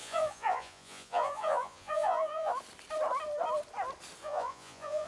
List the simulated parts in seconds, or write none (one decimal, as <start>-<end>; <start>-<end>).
0.0-2.5; 4.2-5.1